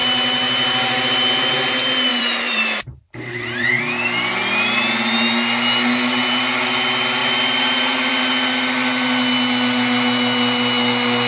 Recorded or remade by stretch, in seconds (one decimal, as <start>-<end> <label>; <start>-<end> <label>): 0.0-1.5 remade; 1.5-2.1 recorded; 2.1-3.8 remade; 3.8-7.2 recorded; 7.2-8.2 remade; 8.2-11.3 recorded